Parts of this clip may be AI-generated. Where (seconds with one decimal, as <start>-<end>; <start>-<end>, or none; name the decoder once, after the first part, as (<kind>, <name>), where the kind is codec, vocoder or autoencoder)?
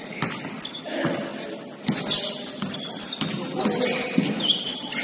none